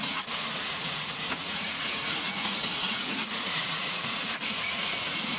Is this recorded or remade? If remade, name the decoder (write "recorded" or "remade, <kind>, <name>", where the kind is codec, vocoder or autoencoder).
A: remade, vocoder, Vocos